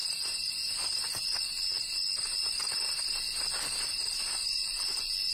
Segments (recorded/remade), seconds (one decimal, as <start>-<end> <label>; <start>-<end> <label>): 0.0-0.5 recorded; 0.5-1.2 remade; 1.2-2.4 recorded; 2.4-4.0 remade; 4.0-5.3 recorded